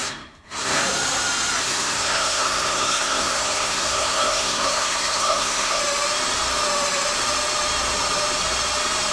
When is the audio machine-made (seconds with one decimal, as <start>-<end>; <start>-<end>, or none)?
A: 0.0-0.8; 1.6-5.8